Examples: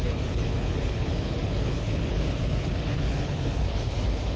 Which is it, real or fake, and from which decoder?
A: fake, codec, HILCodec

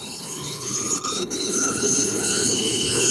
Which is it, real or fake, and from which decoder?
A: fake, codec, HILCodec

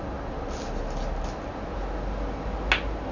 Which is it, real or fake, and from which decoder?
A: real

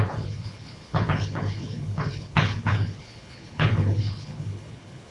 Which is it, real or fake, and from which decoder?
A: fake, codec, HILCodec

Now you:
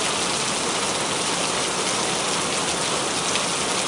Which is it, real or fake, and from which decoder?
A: real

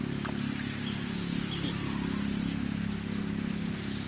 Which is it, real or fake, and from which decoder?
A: real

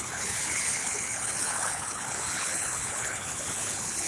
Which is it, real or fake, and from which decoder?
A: fake, codec, HILCodec